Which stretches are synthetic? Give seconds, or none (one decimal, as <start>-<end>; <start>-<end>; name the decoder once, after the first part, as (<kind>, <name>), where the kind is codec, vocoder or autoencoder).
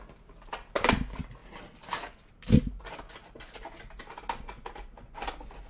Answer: none